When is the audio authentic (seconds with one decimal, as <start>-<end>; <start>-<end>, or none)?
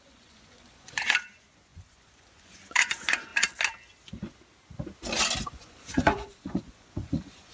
3.3-5.4